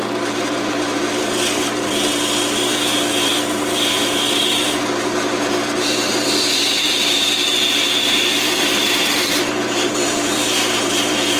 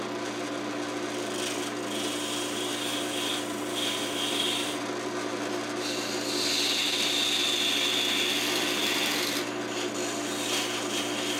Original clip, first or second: second